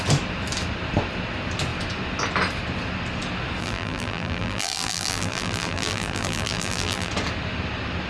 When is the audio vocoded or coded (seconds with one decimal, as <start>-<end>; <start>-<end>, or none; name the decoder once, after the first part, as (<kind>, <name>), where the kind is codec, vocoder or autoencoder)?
3.6-7.1 (vocoder, BigVGAN v2)